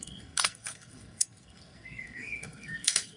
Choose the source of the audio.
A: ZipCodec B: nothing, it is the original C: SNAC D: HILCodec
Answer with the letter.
C